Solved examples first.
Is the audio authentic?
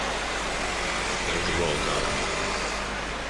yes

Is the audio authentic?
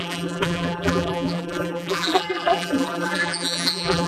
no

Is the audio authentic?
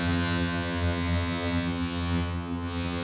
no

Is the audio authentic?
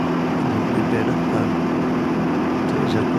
yes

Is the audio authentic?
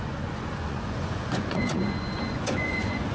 no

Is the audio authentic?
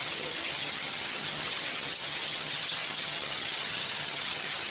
no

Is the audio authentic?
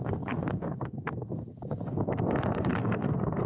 no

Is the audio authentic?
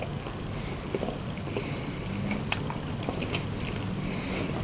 yes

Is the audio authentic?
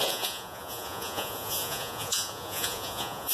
no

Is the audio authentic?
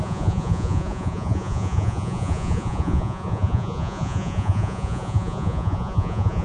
no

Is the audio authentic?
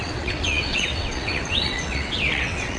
no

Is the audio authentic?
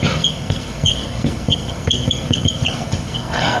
no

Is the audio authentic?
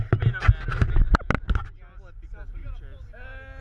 yes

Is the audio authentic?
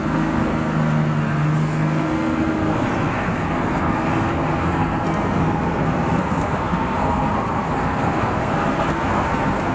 no